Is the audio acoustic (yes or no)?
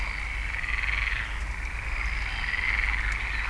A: yes